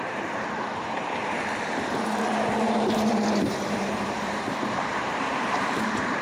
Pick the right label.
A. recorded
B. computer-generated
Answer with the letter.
B